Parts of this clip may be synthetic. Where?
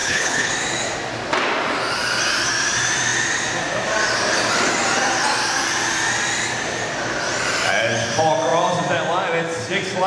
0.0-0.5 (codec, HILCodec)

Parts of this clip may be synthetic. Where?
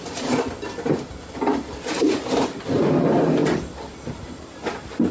none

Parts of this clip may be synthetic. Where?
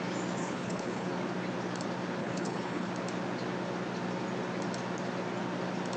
0.4-1.1 (codec, HILCodec); 2.2-2.9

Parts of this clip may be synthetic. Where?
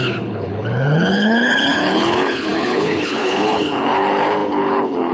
0.0-5.1 (codec, HILCodec)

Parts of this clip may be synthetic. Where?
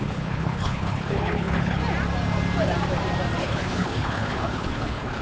0.0-1.8 (codec, HILCodec); 3.4-5.2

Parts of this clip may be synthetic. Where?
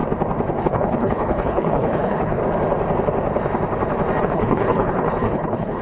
0.6-2.4 (codec, HILCodec); 4.2-5.8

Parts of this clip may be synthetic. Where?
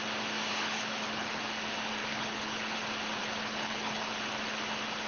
0.5-1.4 (codec, HILCodec); 2.0-2.7; 3.2-4.1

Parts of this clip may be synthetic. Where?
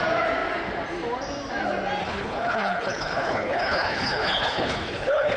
2.0-5.4 (codec, HILCodec)